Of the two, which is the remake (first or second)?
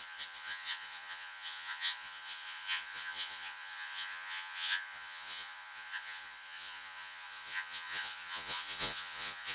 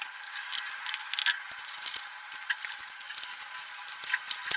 first